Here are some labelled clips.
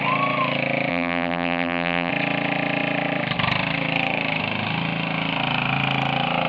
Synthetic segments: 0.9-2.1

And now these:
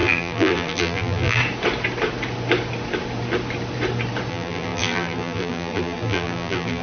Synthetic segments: 0.0-1.4; 4.3-6.8

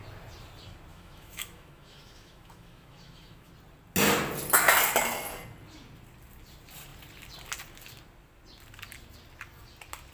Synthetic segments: 0.9-3.5